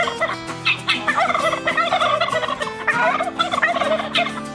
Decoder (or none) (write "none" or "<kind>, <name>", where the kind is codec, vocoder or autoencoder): none